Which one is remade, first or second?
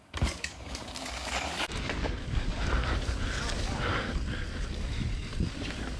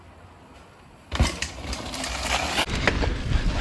first